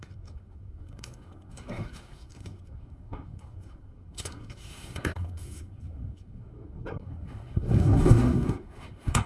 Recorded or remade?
remade